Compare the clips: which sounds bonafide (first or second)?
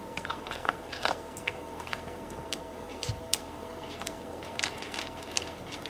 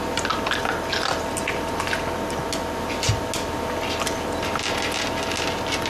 second